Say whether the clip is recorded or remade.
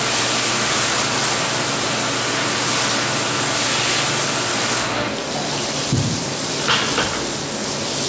recorded